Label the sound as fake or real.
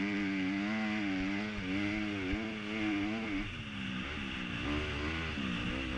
real